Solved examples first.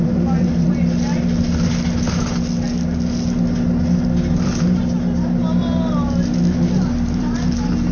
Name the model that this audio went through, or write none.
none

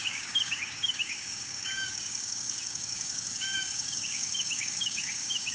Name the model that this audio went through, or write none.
codec, DAC